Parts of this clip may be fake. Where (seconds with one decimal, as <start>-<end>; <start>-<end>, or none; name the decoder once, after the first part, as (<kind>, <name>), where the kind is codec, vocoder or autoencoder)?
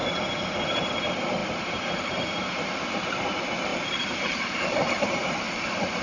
0.0-0.9 (vocoder, BigVGAN v2); 1.4-3.1; 3.7-5.3